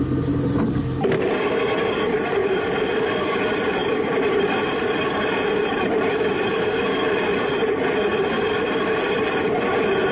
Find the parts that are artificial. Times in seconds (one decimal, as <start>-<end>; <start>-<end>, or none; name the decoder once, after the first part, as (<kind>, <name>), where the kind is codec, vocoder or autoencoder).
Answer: 2.4-3.0 (vocoder, BigVGAN v2); 3.8-7.7; 8.1-9.3